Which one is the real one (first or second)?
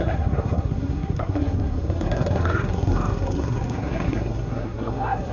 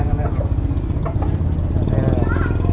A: second